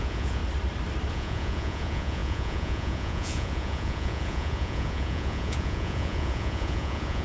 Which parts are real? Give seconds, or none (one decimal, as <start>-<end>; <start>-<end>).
0.4-1.1